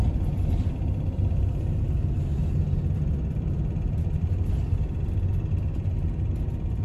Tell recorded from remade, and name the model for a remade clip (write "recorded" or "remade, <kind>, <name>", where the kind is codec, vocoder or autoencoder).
recorded